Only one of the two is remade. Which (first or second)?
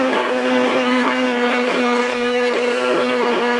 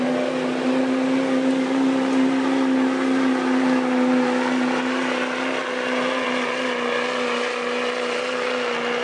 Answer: first